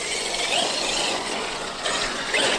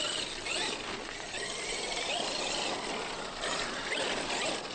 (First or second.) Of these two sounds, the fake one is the first